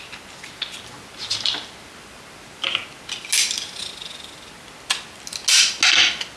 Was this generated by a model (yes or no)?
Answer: no